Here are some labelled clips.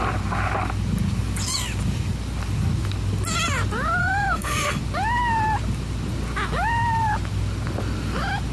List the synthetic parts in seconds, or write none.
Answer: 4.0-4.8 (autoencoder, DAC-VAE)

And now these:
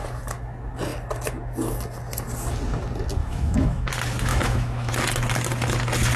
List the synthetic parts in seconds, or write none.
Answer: 3.2-3.9 (autoencoder, DAC-VAE); 4.3-4.9

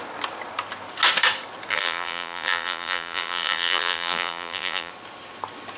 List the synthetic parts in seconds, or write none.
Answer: 1.7-4.9 (vocoder, BigVGAN v2)

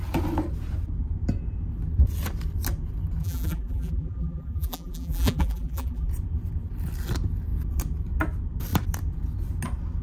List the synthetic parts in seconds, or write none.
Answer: 3.2-6.1 (vocoder, BigVGAN v2)

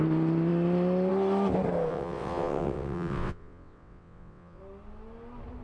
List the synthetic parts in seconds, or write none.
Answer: 1.9-4.6 (vocoder, WaveNeXt)

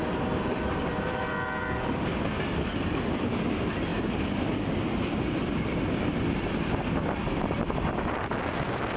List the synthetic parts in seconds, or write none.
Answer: none

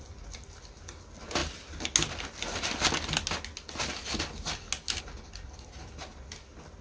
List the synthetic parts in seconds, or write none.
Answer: none

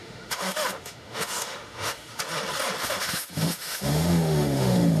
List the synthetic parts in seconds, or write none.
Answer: 0.0-2.2 (autoencoder, DAC-VAE); 2.8-5.0